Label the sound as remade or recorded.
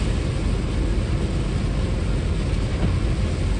recorded